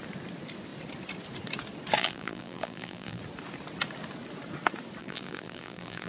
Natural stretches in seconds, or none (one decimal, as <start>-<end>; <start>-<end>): 0.0-2.0; 3.2-5.0